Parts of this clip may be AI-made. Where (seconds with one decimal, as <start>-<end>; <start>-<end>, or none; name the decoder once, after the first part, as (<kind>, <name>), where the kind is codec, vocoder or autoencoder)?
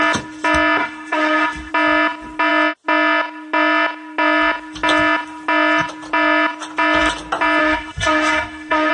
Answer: 0.8-1.7 (autoencoder, DAC-VAE); 7.6-8.9